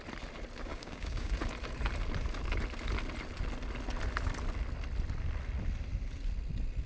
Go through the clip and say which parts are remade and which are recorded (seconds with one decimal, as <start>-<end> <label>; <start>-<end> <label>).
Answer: 0.0-0.7 recorded; 0.7-1.3 remade; 1.3-6.9 recorded